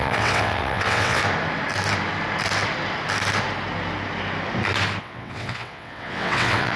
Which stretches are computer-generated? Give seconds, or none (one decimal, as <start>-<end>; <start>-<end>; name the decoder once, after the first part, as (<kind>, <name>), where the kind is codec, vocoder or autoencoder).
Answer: 0.0-1.2 (vocoder, WaveNeXt); 5.0-6.8